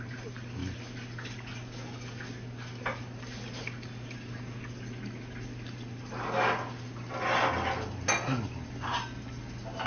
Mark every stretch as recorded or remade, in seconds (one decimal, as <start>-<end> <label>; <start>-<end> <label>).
0.0-9.9 recorded